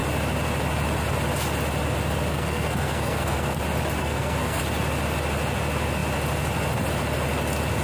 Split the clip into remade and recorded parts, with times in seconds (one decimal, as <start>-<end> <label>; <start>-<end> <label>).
0.0-2.3 recorded; 2.3-3.6 remade; 3.6-4.0 recorded; 4.0-4.6 remade; 4.6-7.8 recorded